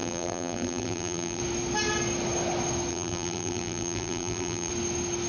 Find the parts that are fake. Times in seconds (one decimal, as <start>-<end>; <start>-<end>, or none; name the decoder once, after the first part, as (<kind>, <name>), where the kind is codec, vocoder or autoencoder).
0.0-1.4 (vocoder, BigVGAN v2); 2.9-4.7